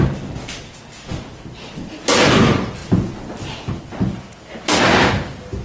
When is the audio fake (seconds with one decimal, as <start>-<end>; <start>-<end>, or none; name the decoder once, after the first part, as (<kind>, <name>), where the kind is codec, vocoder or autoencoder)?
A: none